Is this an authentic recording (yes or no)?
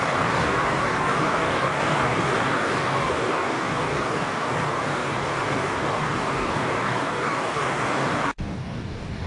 no